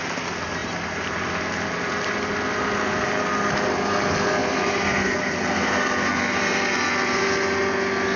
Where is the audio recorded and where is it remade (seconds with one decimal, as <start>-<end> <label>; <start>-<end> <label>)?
0.0-0.6 recorded; 0.6-1.3 remade; 1.3-4.4 recorded; 4.4-6.1 remade; 6.1-8.2 recorded